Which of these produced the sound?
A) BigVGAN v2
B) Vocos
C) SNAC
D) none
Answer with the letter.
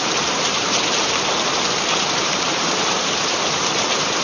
A